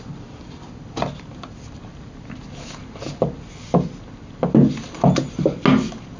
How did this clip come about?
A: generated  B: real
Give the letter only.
B